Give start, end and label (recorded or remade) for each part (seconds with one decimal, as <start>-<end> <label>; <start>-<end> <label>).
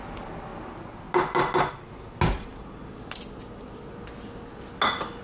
0.0-5.2 recorded